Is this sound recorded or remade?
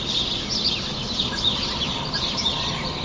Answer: recorded